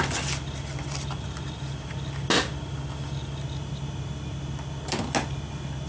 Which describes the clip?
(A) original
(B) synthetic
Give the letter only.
A